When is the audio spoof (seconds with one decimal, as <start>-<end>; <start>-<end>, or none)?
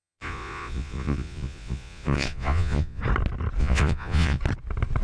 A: 0.0-3.0; 3.6-4.4